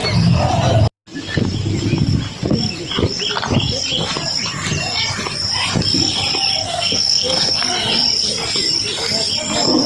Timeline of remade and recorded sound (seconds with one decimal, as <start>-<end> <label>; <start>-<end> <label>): 0.0-6.7 recorded; 6.7-7.6 remade; 7.6-9.9 recorded